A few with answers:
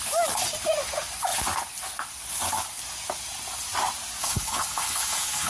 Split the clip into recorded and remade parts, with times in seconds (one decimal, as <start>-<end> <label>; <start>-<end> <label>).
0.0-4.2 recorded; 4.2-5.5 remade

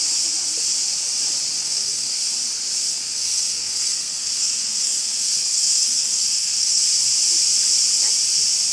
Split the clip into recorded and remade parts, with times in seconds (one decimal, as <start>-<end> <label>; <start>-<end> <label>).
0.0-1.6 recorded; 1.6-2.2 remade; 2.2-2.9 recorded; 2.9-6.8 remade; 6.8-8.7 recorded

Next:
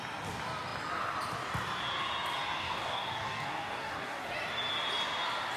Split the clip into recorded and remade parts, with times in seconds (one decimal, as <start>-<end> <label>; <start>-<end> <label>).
0.0-2.6 recorded; 2.6-4.2 remade; 4.2-5.6 recorded

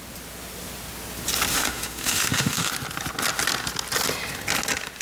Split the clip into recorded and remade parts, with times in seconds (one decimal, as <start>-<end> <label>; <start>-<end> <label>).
0.0-1.5 recorded; 1.5-2.7 remade; 2.7-5.0 recorded

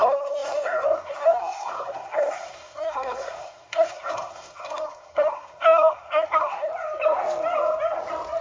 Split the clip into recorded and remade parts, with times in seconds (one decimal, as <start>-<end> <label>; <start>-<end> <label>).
0.0-6.7 remade; 6.7-8.4 recorded